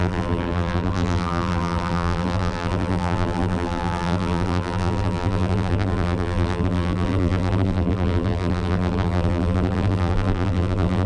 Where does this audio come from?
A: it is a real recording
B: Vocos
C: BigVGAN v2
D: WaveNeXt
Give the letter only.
C